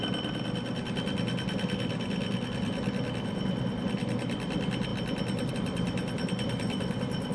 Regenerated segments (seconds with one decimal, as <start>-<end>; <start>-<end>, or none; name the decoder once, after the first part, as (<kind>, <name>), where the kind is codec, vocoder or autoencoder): none